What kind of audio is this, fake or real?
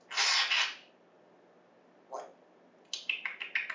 real